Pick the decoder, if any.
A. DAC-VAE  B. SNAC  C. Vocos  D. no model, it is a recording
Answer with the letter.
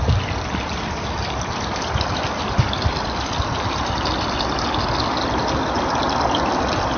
D